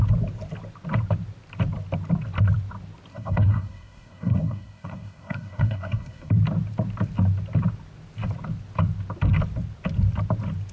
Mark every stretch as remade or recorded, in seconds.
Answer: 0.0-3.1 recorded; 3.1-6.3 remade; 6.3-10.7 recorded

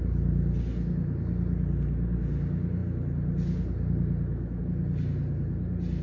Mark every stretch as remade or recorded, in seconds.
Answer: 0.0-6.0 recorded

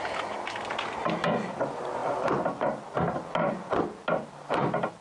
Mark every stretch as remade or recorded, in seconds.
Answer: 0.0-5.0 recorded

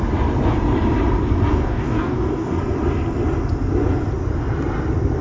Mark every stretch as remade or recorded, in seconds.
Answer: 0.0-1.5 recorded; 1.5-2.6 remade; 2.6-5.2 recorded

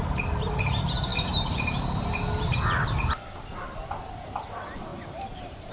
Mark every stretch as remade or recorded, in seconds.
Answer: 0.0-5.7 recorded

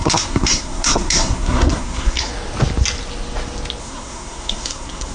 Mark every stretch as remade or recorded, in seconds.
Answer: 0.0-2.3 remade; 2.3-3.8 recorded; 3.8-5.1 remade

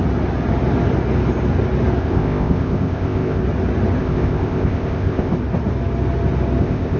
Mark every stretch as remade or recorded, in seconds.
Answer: 0.0-2.0 recorded; 2.0-3.4 remade; 3.4-4.0 recorded; 4.0-5.3 remade; 5.3-6.6 recorded; 6.6-7.0 remade